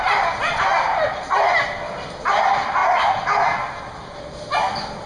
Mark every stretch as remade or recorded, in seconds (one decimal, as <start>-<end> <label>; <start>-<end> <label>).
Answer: 0.0-5.1 recorded